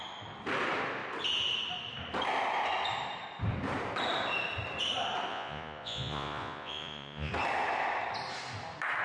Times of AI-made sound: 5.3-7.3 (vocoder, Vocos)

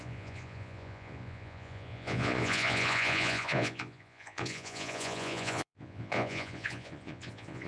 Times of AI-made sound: 0.0-7.7 (vocoder, Vocos)

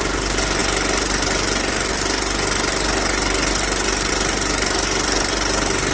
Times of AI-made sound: none